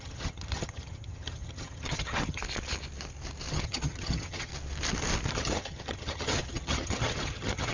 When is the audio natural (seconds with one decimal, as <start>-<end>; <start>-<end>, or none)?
2.4-3.5; 4.5-5.3